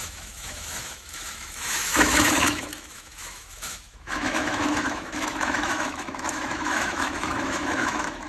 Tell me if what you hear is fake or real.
fake